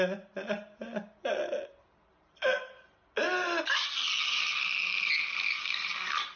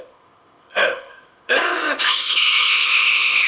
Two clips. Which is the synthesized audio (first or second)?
second